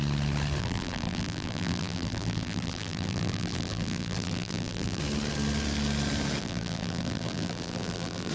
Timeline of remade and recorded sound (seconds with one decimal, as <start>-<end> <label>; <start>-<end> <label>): 0.0-0.6 recorded; 0.6-5.0 remade; 5.0-6.4 recorded; 6.4-8.3 remade

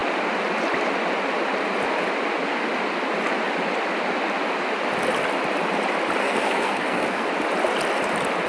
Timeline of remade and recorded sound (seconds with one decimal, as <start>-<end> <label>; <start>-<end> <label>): 0.0-6.2 recorded; 6.2-7.3 remade; 7.3-8.5 recorded

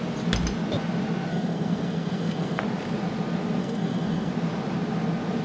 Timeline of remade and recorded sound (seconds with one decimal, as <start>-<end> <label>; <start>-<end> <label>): 0.0-1.3 recorded; 1.3-2.6 remade; 2.6-3.6 recorded; 3.6-4.3 remade; 4.3-5.4 recorded